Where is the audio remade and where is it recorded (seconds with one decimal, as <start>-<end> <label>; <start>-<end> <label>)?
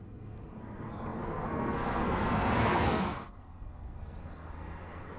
0.0-5.2 remade